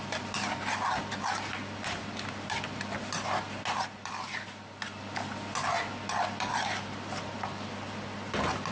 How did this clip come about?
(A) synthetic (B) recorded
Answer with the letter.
B